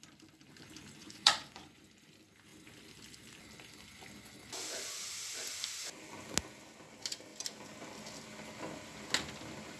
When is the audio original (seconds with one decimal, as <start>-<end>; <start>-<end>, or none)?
0.0-1.0; 1.8-9.8